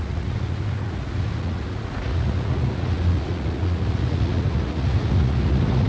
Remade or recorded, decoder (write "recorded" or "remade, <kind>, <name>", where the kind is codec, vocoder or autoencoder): remade, vocoder, Vocos